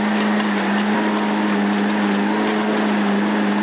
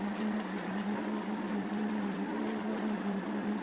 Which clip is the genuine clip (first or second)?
first